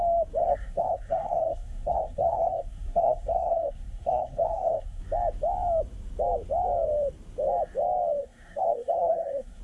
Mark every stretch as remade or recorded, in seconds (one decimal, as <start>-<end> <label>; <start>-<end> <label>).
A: 0.0-0.4 recorded; 0.4-5.0 remade; 5.0-8.2 recorded; 8.2-9.6 remade